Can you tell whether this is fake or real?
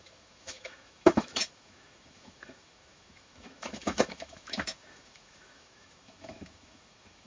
fake